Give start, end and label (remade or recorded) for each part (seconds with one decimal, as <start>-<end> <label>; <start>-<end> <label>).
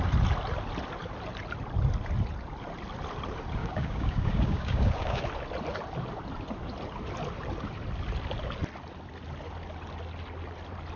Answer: 0.0-3.6 recorded; 3.6-5.2 remade; 5.2-11.0 recorded